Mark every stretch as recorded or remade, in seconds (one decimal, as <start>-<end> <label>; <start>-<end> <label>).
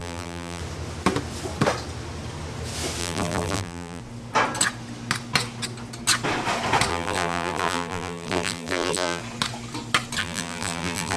0.0-0.6 remade; 0.6-3.0 recorded; 3.0-4.0 remade; 4.0-6.9 recorded; 6.9-9.2 remade; 9.2-10.2 recorded; 10.2-11.2 remade